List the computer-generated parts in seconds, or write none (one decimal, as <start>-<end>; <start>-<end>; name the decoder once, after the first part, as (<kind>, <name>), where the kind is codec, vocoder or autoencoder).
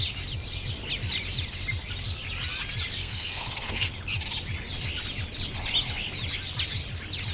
3.0-3.9 (codec, SNAC)